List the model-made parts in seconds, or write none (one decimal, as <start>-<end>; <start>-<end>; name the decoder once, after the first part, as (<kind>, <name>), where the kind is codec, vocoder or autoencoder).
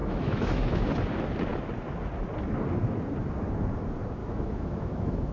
0.0-0.9 (autoencoder, DAC-VAE); 4.2-5.3